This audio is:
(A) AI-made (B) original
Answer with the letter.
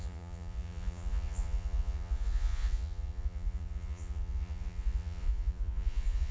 A